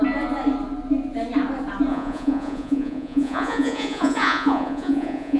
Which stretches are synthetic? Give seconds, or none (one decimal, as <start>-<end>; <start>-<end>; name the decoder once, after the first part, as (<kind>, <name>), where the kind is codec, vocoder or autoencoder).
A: 1.9-5.4 (vocoder, Vocos)